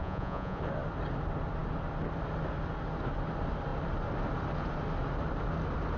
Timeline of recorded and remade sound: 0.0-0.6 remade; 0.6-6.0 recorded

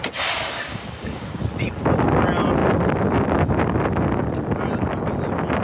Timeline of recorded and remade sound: 0.0-0.7 recorded; 0.7-1.4 remade; 1.4-5.6 recorded

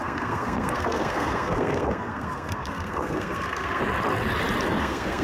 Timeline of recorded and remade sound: 0.0-3.8 remade; 3.8-4.8 recorded; 4.8-5.2 remade

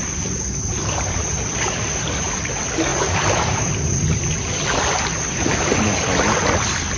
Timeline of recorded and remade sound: 0.0-2.9 recorded; 2.9-3.8 remade; 3.8-7.0 recorded

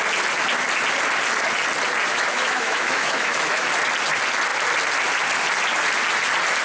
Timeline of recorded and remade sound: 0.0-2.1 recorded; 2.1-3.7 remade; 3.7-6.6 recorded